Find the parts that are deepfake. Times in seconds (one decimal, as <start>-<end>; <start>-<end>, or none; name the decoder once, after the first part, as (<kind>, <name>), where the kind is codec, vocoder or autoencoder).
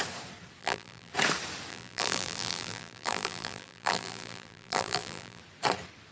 0.6-1.1 (vocoder, BigVGAN v2); 1.7-5.4